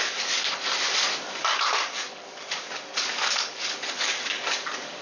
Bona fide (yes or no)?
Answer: no